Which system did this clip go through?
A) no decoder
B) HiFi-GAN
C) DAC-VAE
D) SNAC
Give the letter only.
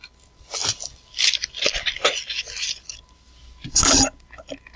A